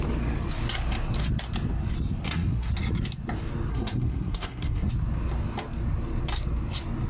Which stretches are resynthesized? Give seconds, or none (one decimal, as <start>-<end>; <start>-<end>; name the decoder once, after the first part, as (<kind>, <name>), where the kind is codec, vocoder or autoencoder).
2.2-2.7 (codec, SNAC); 3.7-4.9